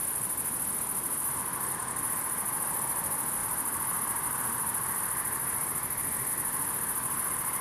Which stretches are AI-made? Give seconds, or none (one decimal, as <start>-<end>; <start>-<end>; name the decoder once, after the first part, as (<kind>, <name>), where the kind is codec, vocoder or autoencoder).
none